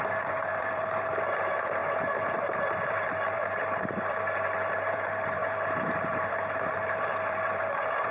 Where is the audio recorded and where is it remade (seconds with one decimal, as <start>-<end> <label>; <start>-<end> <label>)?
0.0-8.1 remade